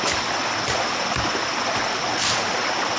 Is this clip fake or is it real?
real